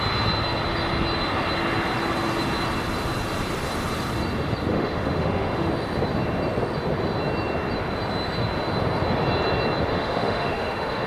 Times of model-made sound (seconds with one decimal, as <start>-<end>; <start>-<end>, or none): 4.7-5.7; 9.9-11.1